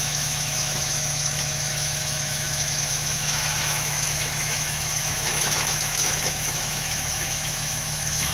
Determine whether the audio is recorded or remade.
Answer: remade